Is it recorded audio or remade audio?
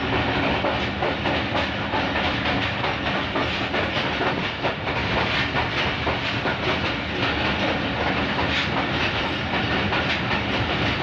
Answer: recorded